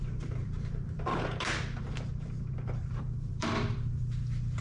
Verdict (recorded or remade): remade